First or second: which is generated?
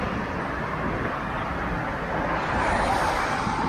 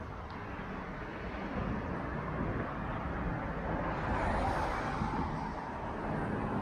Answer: first